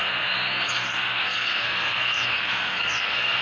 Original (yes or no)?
no